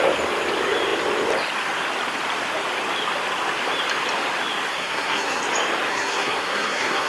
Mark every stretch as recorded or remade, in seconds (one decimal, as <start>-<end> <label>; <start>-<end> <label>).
0.0-4.7 recorded; 4.7-5.4 remade; 5.4-5.9 recorded; 5.9-7.1 remade